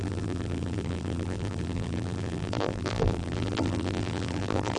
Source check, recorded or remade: remade